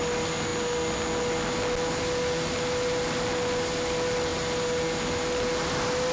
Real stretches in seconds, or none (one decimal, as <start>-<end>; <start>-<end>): 0.5-2.0